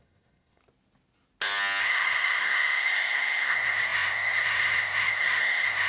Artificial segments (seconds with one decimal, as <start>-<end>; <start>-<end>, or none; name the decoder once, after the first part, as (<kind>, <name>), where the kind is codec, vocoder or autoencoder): 0.0-0.6 (codec, SNAC); 1.8-5.9